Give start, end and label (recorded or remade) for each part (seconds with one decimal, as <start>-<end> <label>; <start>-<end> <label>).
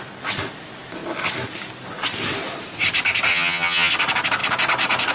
0.0-3.3 recorded; 3.3-3.9 remade; 3.9-5.1 recorded